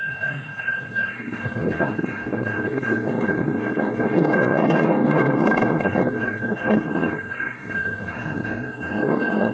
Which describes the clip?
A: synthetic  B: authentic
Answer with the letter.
A